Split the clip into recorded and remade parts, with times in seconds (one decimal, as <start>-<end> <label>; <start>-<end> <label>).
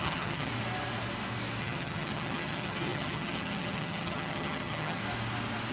0.0-0.5 remade; 0.5-1.6 recorded; 1.6-5.0 remade; 5.0-5.7 recorded